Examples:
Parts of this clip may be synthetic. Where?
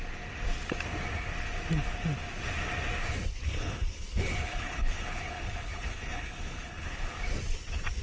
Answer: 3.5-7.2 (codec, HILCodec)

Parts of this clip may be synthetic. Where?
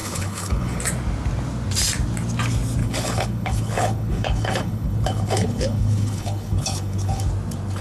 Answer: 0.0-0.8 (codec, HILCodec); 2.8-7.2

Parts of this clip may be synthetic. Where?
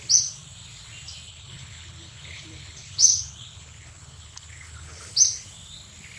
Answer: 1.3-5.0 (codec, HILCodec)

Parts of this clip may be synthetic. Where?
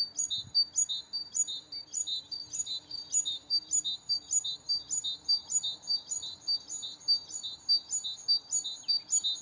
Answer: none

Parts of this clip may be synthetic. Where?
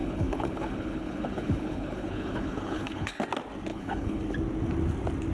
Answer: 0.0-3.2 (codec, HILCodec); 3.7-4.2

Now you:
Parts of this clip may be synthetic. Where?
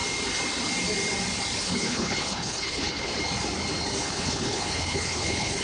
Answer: 1.6-3.1 (codec, HILCodec); 4.0-5.6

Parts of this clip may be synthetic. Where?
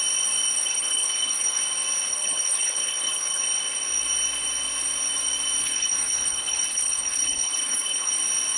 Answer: 0.6-1.6 (codec, HILCodec); 2.1-3.4; 5.6-8.1